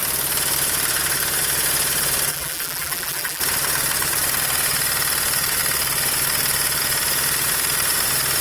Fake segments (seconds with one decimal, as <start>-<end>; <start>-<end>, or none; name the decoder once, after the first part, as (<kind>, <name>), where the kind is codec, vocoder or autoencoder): 2.3-3.4 (vocoder, BigVGAN v2)